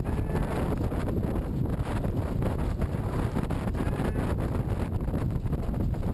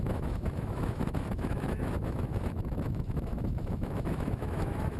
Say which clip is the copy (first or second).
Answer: second